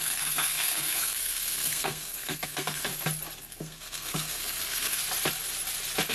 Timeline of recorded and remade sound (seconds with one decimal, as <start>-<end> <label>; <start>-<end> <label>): 0.0-2.9 remade; 2.9-3.4 recorded; 3.4-5.0 remade; 5.0-6.1 recorded